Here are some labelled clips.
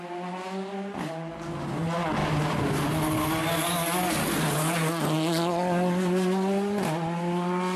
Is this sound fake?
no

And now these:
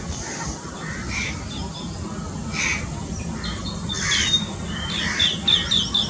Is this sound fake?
no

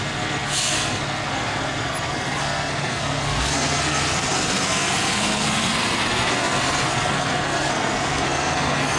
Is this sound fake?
yes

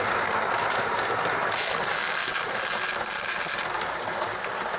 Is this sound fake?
no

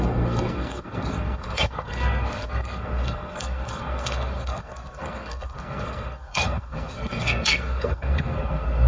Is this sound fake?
yes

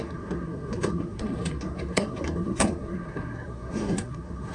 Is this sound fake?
yes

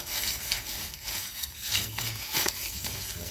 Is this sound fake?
yes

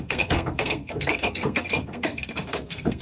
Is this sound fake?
yes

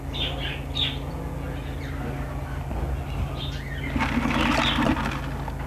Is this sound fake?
no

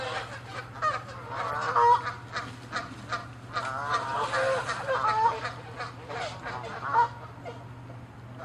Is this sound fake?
no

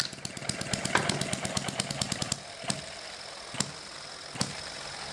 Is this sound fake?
no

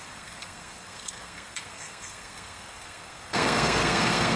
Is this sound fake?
yes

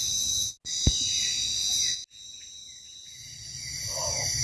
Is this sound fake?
no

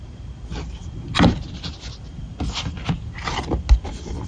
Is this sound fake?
no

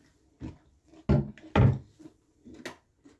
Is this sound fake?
no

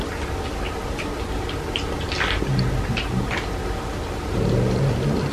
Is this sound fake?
no